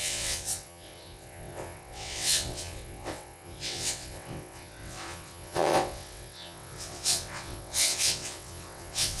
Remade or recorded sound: remade